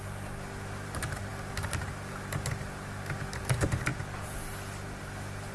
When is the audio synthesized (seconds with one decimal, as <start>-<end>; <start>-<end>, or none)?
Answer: none

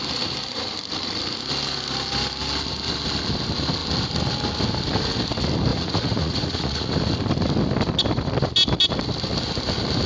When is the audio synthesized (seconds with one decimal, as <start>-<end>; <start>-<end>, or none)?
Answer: 5.7-6.9

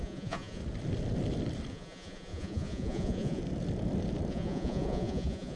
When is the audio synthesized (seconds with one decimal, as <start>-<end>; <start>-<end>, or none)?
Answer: 0.0-0.6; 1.7-3.4; 4.3-5.6

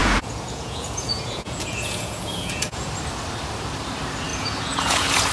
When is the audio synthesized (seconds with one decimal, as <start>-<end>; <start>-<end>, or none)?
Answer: 0.0-2.9; 4.3-5.3

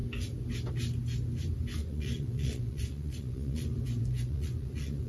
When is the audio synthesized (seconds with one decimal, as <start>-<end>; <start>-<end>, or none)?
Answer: 1.8-5.1

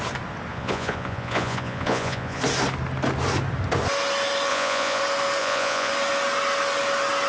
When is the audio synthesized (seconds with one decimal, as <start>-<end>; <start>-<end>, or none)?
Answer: 0.5-2.4; 4.5-5.0; 5.4-5.9